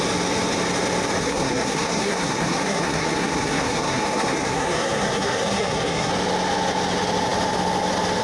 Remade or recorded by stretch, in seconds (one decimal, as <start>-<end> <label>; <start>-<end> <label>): 0.0-1.2 recorded; 1.2-6.1 remade; 6.1-8.2 recorded